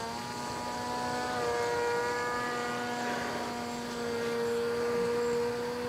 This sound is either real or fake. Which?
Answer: real